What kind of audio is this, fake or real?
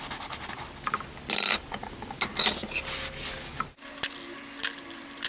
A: real